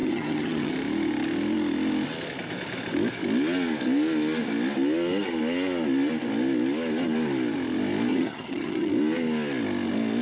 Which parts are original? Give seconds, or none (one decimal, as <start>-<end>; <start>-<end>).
0.7-8.1; 8.9-10.2